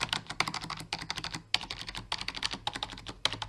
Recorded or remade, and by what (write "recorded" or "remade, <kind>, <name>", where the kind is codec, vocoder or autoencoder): recorded